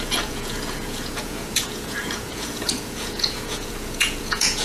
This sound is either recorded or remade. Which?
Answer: remade